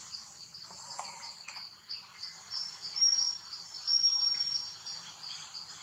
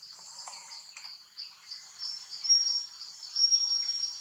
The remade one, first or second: second